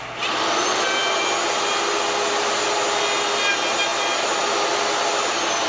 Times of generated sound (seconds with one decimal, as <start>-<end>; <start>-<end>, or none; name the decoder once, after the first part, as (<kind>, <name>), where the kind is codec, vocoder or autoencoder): none